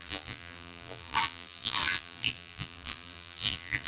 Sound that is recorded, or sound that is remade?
remade